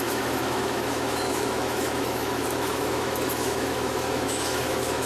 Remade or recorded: remade